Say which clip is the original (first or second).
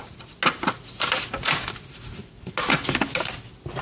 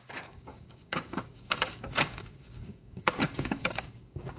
first